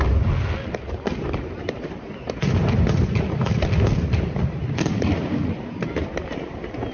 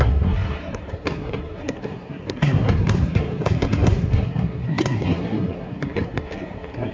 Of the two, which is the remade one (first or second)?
second